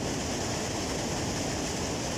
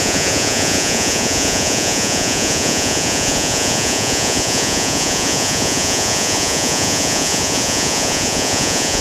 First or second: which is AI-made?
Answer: second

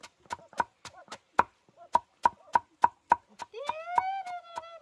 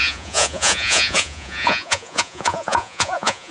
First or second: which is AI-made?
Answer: second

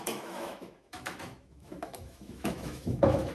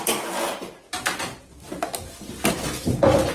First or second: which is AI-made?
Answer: first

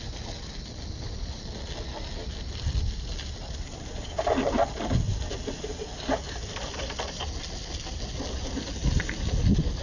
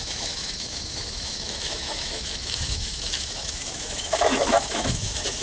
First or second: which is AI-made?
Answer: second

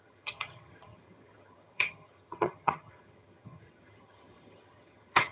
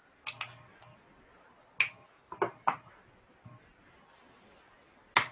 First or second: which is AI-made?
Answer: first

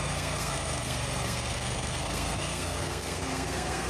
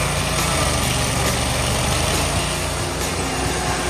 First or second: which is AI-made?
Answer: first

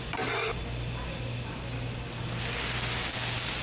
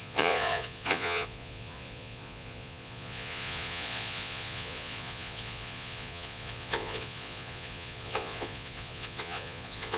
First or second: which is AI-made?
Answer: second